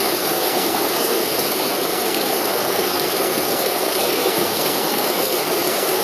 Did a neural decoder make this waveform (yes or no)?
yes